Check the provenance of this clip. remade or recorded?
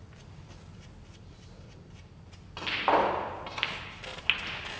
recorded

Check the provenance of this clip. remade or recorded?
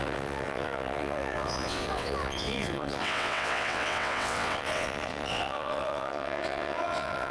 remade